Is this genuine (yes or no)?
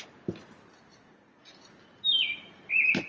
yes